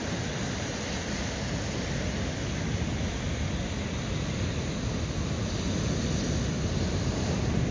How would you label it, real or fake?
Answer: real